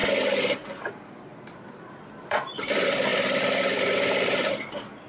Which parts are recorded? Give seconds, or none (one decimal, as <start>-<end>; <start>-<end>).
0.0-1.3; 2.6-3.1; 4.5-5.1